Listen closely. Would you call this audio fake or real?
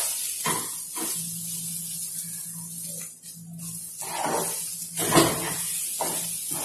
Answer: real